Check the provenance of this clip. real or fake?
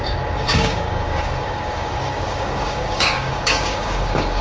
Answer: fake